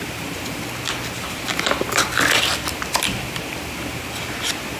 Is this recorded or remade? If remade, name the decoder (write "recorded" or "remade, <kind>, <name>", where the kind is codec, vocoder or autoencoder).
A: remade, vocoder, BigVGAN v2